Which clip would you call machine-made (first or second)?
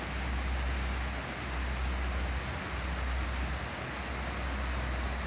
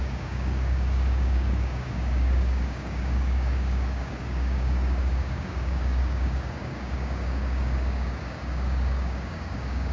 second